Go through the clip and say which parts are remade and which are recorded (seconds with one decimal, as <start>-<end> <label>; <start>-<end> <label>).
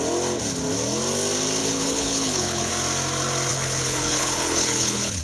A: 0.0-1.6 recorded; 1.6-2.7 remade; 2.7-3.5 recorded; 3.5-5.2 remade